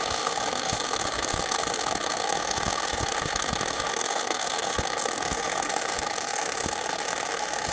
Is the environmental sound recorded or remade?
remade